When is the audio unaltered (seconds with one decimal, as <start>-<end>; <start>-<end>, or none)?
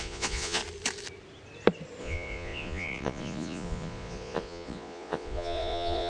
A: 0.6-2.0